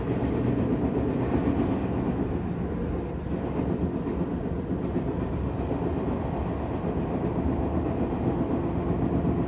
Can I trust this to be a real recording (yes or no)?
yes